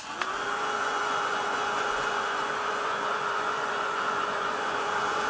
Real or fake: fake